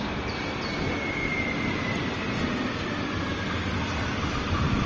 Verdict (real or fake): real